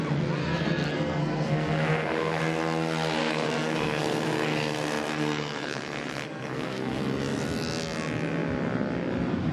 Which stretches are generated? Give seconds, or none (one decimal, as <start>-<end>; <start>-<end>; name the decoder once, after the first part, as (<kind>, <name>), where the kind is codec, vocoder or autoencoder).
0.4-2.4 (codec, SNAC); 3.2-7.0